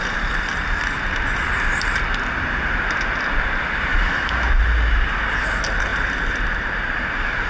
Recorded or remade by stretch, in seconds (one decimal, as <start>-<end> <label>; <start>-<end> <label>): 0.0-3.9 recorded; 3.9-4.6 remade; 4.6-7.5 recorded